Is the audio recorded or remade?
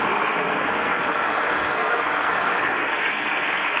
remade